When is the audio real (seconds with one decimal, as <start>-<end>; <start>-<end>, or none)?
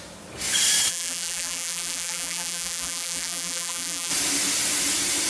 0.0-0.9; 4.1-5.3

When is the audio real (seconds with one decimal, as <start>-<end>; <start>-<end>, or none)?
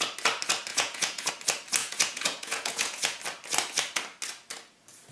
0.0-0.7; 1.3-1.8; 3.2-5.1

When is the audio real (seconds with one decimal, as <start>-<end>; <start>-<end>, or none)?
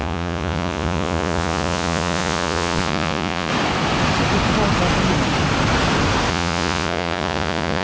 3.5-6.3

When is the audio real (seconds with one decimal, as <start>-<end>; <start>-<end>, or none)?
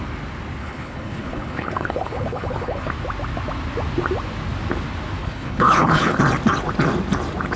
0.0-0.6; 2.9-5.2; 6.2-7.6